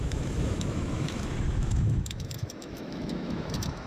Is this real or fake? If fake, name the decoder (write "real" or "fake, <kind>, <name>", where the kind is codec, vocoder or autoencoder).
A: fake, autoencoder, DAC-VAE